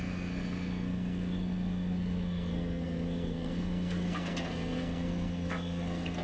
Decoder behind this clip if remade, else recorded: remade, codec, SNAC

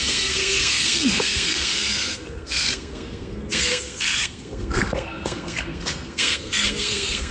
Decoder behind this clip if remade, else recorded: remade, codec, SNAC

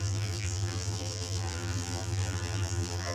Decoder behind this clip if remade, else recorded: remade, vocoder, BigVGAN v2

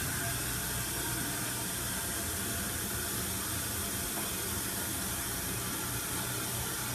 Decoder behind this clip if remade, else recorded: recorded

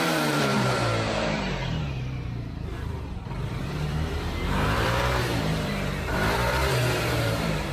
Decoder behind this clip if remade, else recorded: remade, vocoder, BigVGAN v2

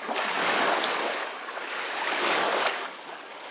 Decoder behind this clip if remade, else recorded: remade, codec, DAC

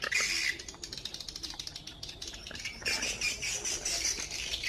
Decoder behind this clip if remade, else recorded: recorded